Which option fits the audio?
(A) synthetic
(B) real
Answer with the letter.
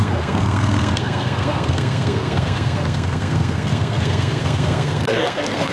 A